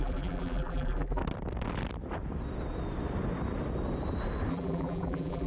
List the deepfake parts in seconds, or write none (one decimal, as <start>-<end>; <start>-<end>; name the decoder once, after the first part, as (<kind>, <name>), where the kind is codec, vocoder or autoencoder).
0.0-1.2 (vocoder, BigVGAN v2); 4.5-5.5